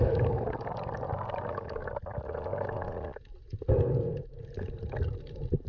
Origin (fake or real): real